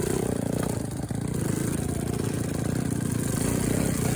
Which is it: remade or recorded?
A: recorded